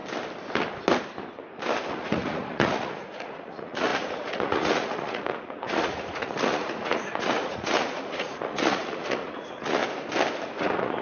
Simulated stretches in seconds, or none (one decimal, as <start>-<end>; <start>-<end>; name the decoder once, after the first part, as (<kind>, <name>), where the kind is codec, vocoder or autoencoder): 1.9-9.8 (vocoder, Vocos); 10.6-11.0